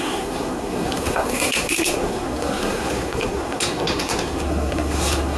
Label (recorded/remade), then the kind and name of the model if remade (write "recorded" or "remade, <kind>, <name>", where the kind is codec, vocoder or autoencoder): remade, codec, SNAC